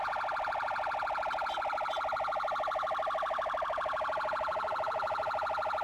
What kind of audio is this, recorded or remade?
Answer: remade